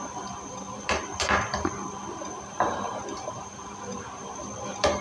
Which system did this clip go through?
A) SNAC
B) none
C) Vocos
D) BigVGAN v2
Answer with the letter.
D